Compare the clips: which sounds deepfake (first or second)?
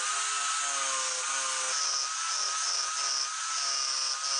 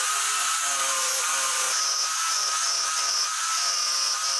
second